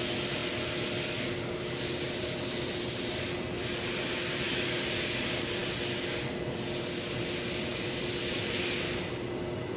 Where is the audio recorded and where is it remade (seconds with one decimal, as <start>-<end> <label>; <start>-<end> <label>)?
0.0-9.8 recorded